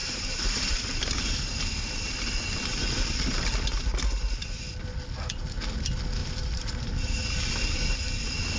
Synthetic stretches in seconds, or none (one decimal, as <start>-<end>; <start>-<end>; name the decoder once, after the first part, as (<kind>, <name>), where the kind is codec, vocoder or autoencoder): 0.0-1.0 (vocoder, BigVGAN v2); 6.2-6.8